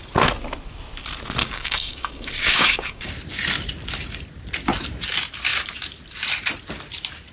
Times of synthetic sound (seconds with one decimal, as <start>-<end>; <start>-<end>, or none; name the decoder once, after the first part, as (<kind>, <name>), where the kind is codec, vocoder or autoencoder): 1.4-3.1 (codec, DAC)